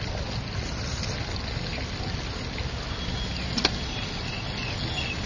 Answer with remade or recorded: recorded